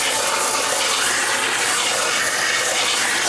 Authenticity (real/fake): real